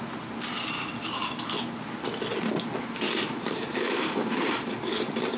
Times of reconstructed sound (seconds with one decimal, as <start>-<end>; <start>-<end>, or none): 0.0-0.9; 2.7-5.4